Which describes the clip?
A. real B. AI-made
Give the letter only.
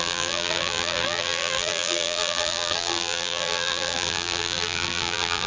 B